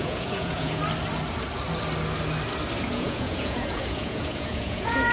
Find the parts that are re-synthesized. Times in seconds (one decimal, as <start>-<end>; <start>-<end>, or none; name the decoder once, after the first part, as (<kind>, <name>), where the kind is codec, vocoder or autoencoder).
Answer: 0.0-0.8 (vocoder, Vocos); 2.8-5.1